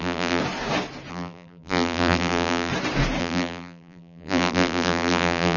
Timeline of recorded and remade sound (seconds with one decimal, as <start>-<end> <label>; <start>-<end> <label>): 0.0-0.4 remade; 0.4-1.1 recorded; 1.1-2.7 remade; 2.7-3.2 recorded; 3.2-5.6 remade